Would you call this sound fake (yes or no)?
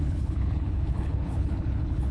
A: yes